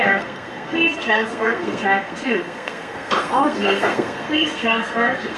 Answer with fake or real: fake